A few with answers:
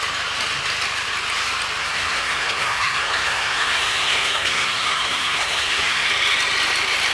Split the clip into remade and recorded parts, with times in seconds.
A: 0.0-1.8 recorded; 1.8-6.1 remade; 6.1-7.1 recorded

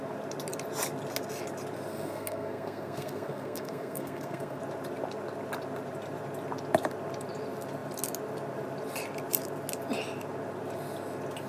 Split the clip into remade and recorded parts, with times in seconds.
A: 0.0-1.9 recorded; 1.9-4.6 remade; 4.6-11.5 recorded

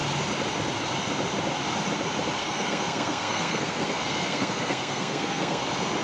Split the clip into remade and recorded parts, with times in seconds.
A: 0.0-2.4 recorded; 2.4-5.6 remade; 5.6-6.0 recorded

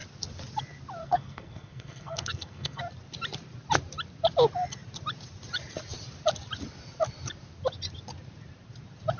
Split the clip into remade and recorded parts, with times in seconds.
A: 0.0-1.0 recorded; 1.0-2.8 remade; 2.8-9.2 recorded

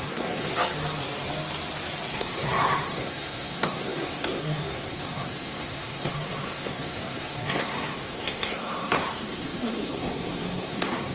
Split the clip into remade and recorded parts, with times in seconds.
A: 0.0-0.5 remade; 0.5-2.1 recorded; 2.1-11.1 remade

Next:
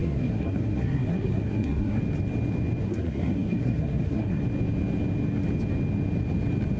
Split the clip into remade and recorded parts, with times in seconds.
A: 0.0-2.0 remade; 2.0-2.8 recorded; 2.8-4.4 remade; 4.4-6.8 recorded

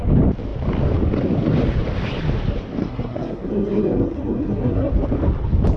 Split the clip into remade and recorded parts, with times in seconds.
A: 0.0-2.8 recorded; 2.8-4.9 remade; 4.9-5.8 recorded

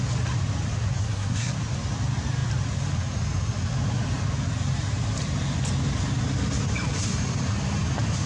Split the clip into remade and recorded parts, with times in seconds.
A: 0.0-1.0 recorded; 1.0-1.5 remade; 1.5-8.3 recorded